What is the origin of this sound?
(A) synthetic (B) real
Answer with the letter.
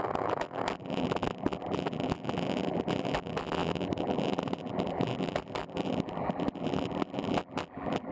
A